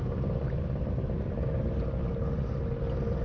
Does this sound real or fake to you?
real